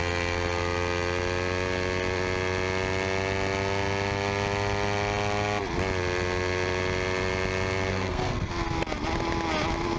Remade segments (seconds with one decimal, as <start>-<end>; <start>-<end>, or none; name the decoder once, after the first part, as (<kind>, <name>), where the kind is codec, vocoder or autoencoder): 7.9-8.5 (codec, SNAC)

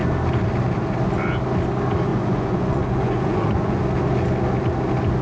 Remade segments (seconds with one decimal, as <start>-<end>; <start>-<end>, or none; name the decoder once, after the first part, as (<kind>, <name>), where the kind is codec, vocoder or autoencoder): 2.1-3.8 (vocoder, Vocos)